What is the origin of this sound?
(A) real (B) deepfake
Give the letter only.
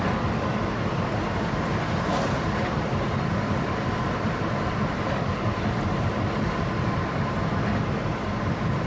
A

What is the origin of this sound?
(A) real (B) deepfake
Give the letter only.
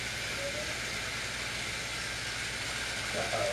A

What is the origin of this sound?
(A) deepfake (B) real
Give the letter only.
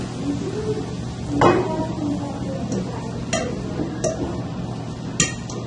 B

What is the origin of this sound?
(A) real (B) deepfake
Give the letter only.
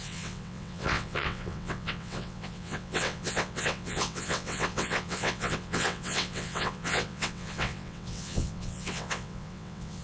B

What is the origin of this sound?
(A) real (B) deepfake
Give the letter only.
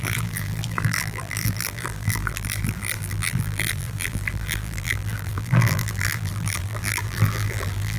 B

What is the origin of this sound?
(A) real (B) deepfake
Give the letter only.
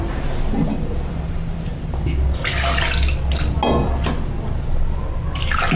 A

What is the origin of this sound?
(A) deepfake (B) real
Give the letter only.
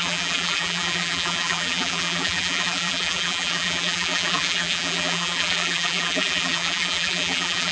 A